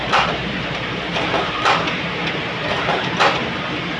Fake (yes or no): yes